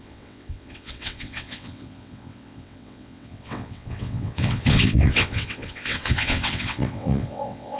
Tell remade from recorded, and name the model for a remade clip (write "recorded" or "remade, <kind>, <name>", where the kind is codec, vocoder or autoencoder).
remade, vocoder, WaveNeXt